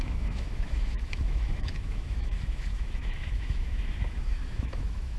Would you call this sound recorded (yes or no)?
no